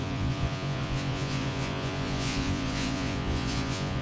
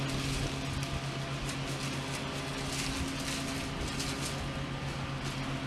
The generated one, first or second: first